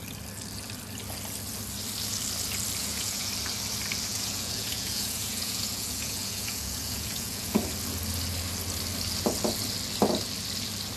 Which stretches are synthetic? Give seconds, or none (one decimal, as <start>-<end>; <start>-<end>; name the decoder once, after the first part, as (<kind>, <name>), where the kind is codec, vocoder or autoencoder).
2.8-3.3 (vocoder, Vocos); 4.1-7.6